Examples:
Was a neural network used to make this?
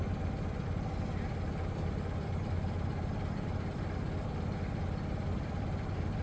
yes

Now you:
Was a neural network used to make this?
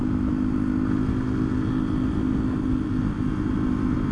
no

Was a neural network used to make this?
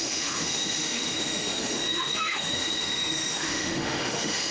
yes